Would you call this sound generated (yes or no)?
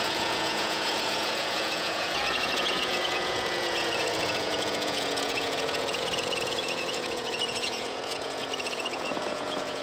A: yes